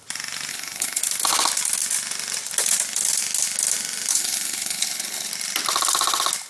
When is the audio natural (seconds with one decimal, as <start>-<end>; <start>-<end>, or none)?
0.0-0.5; 1.0-4.1; 5.3-6.5

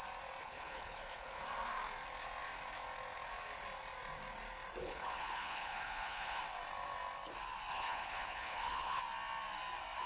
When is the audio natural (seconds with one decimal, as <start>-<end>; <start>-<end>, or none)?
0.0-0.4; 1.4-4.8; 6.4-7.7; 9.0-10.1